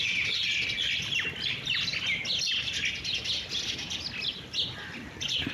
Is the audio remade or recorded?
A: recorded